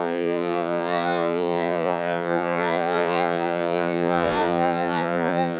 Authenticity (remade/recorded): remade